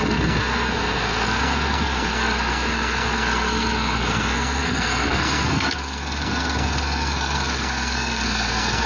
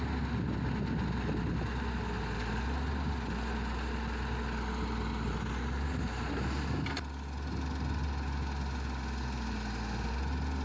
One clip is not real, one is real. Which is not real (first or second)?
first